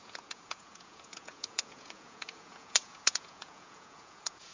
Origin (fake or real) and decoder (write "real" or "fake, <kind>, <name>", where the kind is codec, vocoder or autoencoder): fake, vocoder, Vocos